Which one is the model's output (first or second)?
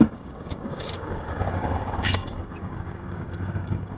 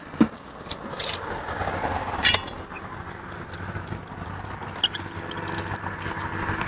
first